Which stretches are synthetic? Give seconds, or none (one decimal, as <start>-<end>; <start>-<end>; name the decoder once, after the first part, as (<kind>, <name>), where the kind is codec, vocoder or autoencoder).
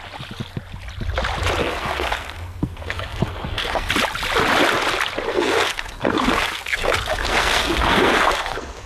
1.6-3.9 (codec, SNAC); 5.3-8.9